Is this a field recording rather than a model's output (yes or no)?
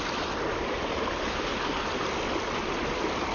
yes